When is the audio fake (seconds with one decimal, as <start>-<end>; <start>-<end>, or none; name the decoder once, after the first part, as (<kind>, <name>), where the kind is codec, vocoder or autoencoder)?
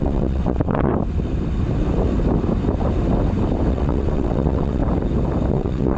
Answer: 0.0-0.9 (vocoder, WaveNeXt); 3.7-4.8; 5.5-6.0